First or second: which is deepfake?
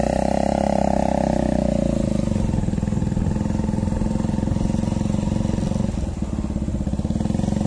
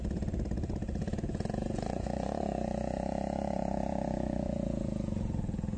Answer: second